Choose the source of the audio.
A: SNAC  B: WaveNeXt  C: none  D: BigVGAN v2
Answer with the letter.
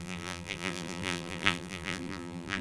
D